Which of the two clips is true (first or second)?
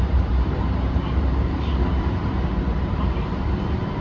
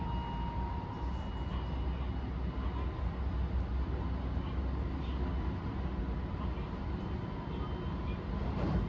second